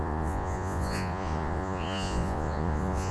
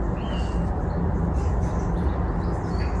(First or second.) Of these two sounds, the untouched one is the second